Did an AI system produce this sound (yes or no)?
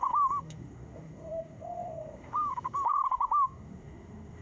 yes